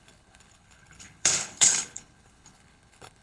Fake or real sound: fake